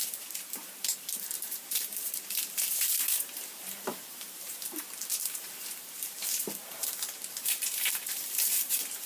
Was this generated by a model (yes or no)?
yes